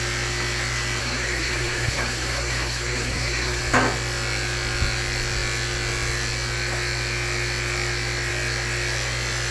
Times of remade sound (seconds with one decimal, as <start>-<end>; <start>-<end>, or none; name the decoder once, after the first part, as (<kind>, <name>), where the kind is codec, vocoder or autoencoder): 1.0-3.6 (codec, SNAC)

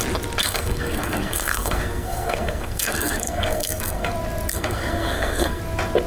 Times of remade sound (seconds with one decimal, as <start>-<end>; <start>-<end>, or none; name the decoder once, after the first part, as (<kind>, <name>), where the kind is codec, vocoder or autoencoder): 0.4-4.1 (codec, SNAC); 4.5-5.6

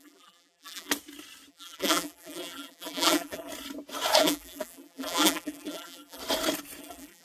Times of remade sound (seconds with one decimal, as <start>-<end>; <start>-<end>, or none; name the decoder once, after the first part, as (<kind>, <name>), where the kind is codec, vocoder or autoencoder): 0.0-0.9 (vocoder, BigVGAN v2); 1.5-3.5; 4.2-6.2; 6.8-7.2

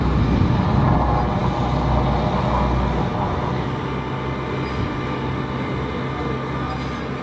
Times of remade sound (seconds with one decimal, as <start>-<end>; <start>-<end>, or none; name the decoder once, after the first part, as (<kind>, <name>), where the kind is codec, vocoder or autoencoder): none

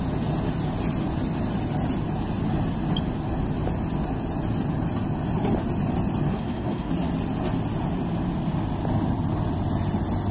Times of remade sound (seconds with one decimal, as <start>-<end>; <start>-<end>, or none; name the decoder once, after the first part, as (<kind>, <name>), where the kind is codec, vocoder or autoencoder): 6.3-6.9 (codec, SNAC)